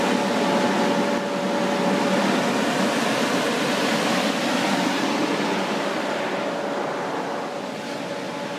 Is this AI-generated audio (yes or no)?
no